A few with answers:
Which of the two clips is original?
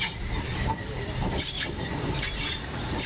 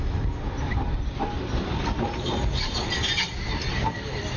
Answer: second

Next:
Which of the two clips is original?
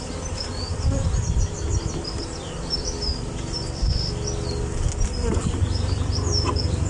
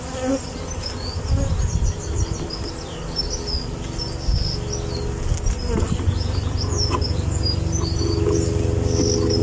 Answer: second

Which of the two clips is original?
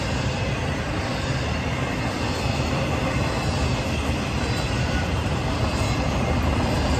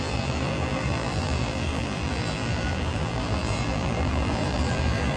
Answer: first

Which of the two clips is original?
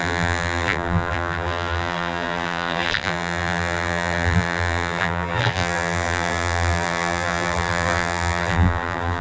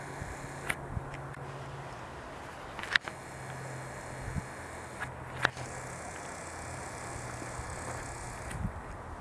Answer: second